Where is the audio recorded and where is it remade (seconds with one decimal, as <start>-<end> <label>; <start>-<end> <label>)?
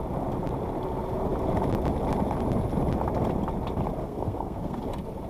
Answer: 0.0-4.0 recorded; 4.0-4.8 remade; 4.8-5.3 recorded